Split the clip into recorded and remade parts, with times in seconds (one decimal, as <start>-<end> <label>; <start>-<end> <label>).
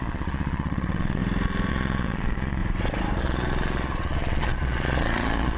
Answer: 0.0-1.2 remade; 1.2-1.7 recorded; 1.7-2.6 remade; 2.6-3.2 recorded; 3.2-5.6 remade